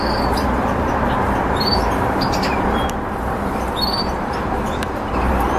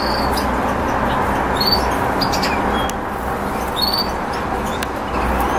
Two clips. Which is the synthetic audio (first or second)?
first